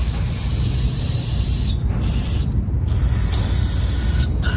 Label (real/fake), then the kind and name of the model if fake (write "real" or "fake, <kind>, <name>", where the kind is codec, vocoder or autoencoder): real